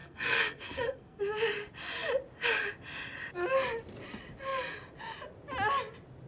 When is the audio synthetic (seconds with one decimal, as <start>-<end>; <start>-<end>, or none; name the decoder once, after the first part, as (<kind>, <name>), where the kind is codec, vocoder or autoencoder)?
0.0-1.2 (codec, SNAC)